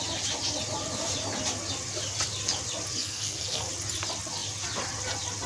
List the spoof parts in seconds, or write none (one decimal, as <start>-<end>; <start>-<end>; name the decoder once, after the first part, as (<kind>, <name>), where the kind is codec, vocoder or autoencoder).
3.0-3.7 (codec, SNAC)